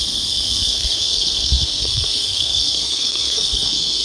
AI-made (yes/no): yes